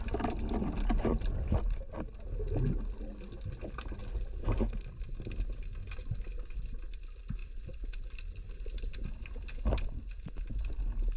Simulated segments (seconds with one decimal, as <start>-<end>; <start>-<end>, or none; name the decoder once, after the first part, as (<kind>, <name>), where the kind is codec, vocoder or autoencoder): none